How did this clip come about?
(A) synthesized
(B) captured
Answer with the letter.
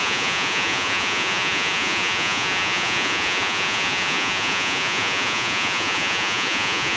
A